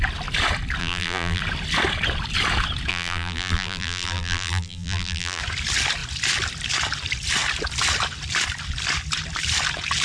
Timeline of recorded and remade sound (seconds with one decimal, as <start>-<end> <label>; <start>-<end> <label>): 0.0-0.8 recorded; 0.8-1.4 remade; 1.4-2.9 recorded; 2.9-5.4 remade; 5.4-10.0 recorded